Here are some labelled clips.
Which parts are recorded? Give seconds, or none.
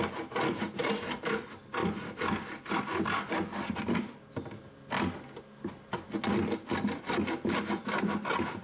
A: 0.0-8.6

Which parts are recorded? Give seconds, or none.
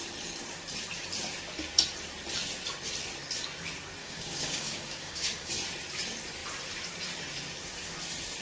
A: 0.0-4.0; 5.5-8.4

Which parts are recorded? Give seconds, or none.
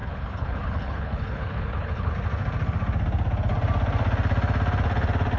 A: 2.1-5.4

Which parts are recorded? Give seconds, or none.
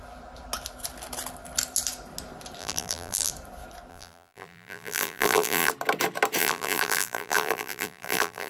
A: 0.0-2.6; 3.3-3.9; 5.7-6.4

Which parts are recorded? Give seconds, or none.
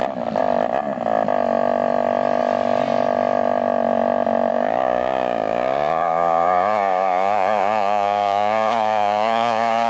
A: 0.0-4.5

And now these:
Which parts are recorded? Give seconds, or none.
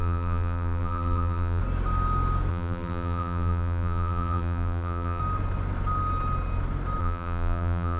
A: 1.6-2.5; 5.2-7.0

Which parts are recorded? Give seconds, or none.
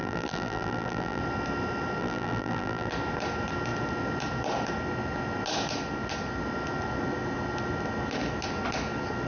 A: 1.2-2.0; 2.9-9.3